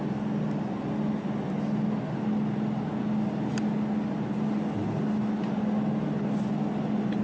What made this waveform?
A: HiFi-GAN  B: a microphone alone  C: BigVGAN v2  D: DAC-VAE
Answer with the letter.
B